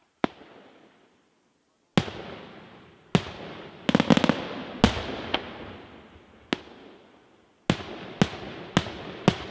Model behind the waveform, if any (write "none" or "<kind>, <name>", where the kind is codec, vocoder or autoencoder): none